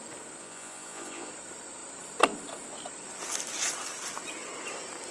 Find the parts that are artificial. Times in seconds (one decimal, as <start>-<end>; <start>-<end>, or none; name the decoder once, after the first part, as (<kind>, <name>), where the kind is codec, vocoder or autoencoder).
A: 0.4-1.3 (vocoder, Vocos)